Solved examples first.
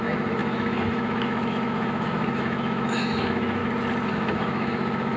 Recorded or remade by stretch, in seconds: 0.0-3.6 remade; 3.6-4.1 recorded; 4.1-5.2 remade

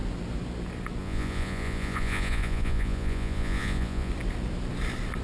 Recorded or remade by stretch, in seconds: 0.0-1.0 recorded; 1.0-4.1 remade; 4.1-5.2 recorded

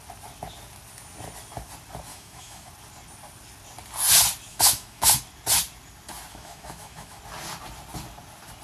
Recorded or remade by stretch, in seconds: 0.0-2.1 recorded; 2.1-2.7 remade; 2.7-4.5 recorded; 4.5-5.2 remade; 5.2-6.3 recorded; 6.3-7.2 remade; 7.2-8.6 recorded

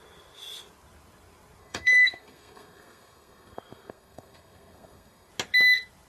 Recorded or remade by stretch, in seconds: 0.0-1.6 recorded; 1.6-5.3 remade; 5.3-6.1 recorded

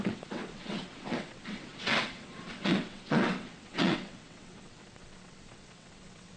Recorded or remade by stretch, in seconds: 0.0-6.4 remade

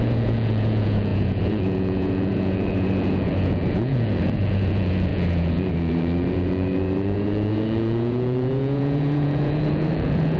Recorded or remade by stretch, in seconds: 0.0-10.4 remade

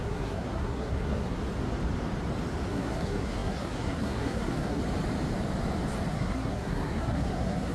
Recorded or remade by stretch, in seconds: 0.0-1.4 remade; 1.4-2.7 recorded; 2.7-4.8 remade; 4.8-6.1 recorded; 6.1-7.7 remade

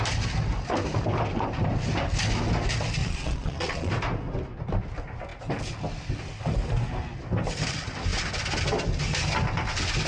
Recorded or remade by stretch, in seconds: 0.0-3.0 recorded; 3.0-3.9 remade; 3.9-10.1 recorded